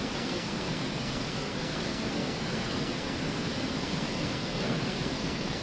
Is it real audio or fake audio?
fake